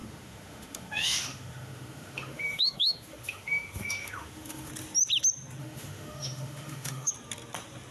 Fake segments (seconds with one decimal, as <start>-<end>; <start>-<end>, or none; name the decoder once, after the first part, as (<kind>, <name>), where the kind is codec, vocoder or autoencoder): 0.0-4.7 (autoencoder, DAC-VAE); 5.6-7.1